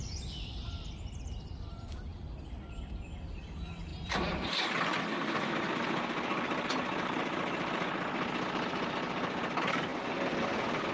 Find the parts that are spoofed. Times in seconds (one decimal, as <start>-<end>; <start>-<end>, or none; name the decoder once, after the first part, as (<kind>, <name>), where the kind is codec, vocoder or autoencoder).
3.9-4.8 (vocoder, BigVGAN v2)